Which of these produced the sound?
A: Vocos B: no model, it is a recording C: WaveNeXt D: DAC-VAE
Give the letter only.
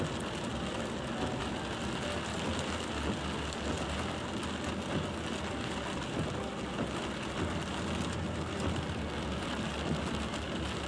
B